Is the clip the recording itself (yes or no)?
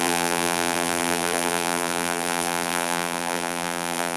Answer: no